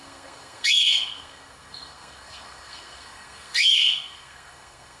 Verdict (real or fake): fake